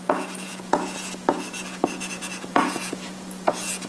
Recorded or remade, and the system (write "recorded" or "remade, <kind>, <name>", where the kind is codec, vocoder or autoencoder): remade, vocoder, Vocos